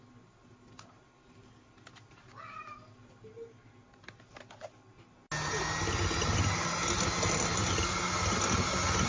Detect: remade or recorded recorded